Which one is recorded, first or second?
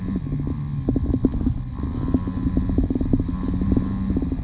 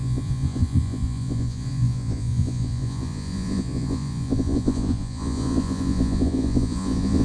first